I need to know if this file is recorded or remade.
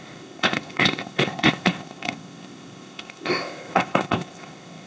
remade